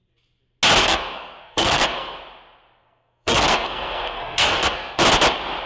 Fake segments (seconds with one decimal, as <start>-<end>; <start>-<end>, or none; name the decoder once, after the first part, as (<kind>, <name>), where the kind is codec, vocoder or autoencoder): 0.8-2.2 (codec, SNAC); 2.8-5.0